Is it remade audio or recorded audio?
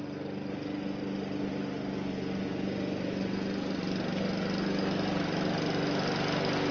recorded